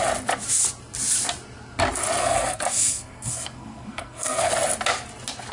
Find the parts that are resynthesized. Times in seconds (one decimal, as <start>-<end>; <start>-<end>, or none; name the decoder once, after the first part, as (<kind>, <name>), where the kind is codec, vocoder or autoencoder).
2.2-4.5 (codec, SNAC)